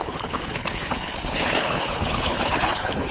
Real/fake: fake